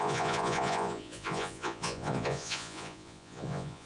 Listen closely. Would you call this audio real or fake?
fake